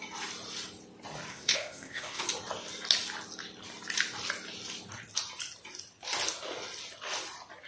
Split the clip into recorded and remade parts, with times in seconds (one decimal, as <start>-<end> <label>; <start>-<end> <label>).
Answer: 0.0-1.3 recorded; 1.3-2.2 remade; 2.2-7.7 recorded